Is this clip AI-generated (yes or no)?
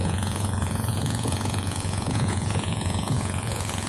yes